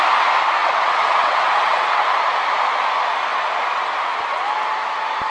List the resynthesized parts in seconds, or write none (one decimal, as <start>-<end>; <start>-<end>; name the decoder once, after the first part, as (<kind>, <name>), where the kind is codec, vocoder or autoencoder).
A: 0.6-2.0 (vocoder, WaveNeXt)